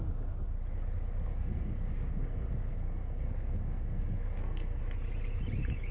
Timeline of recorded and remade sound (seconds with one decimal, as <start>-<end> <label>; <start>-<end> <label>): 0.0-1.3 recorded; 1.3-4.8 remade; 4.8-5.9 recorded